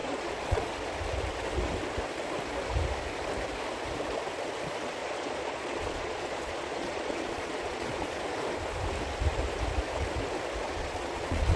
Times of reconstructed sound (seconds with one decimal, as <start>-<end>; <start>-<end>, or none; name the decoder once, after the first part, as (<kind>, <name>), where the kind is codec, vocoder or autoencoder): 0.0-0.7 (vocoder, Vocos); 5.0-8.2; 10.8-11.6